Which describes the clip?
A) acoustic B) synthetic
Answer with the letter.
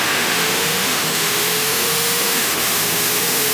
B